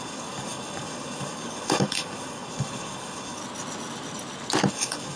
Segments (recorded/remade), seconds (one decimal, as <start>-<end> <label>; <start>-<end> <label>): 0.0-3.4 remade; 3.4-4.7 recorded; 4.7-5.2 remade